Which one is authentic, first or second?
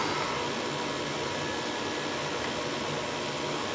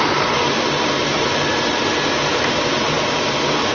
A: first